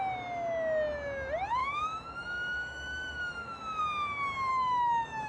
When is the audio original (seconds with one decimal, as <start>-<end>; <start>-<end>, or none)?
0.0-1.6; 3.8-4.5